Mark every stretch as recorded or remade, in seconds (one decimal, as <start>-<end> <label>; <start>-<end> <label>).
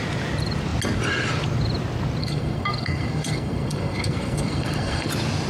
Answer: 0.0-2.2 recorded; 2.2-5.1 remade; 5.1-5.5 recorded